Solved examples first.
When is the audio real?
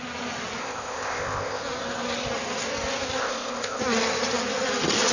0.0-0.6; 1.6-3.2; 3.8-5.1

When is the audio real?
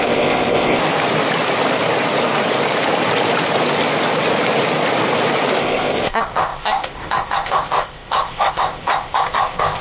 0.8-5.6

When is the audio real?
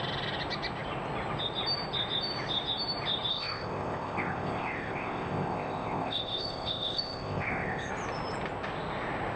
0.0-3.3; 7.9-9.4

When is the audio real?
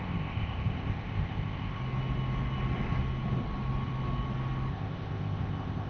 1.8-4.7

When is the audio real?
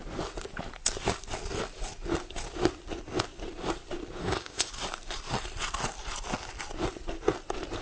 0.0-4.2; 4.7-7.8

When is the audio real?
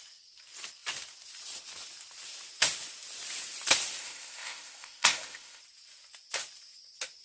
0.0-4.0; 5.6-7.2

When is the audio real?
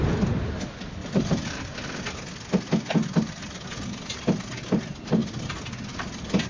0.0-6.5